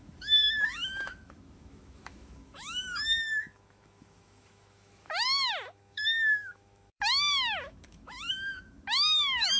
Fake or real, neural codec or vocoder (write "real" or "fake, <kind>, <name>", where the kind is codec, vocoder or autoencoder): fake, autoencoder, DAC-VAE